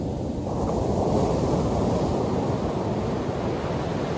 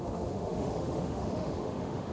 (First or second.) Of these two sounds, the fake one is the second